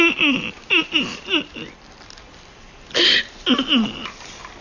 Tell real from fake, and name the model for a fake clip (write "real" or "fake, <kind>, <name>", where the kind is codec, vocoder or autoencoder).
real